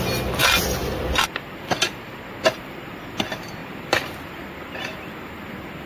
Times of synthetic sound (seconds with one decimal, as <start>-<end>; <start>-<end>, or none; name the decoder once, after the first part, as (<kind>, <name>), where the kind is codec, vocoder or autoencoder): none